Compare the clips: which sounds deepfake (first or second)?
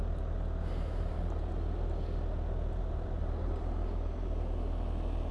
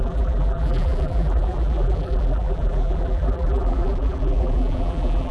second